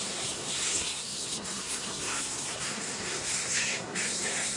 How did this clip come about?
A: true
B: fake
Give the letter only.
B